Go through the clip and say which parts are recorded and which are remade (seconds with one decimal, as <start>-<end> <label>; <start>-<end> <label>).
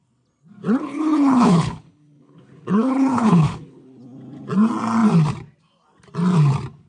0.0-0.8 recorded; 0.8-4.0 remade; 4.0-6.9 recorded